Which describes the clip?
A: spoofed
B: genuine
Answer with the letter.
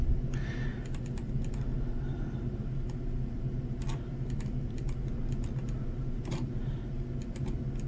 B